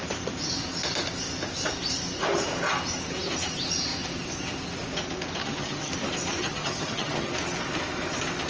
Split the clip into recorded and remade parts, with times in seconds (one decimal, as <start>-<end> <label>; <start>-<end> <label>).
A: 0.0-5.4 recorded; 5.4-5.9 remade; 5.9-6.4 recorded; 6.4-7.3 remade; 7.3-8.5 recorded